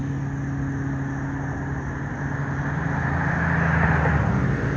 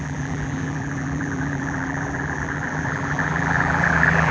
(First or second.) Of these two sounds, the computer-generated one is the second